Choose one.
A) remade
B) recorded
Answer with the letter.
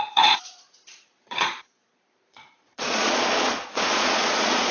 A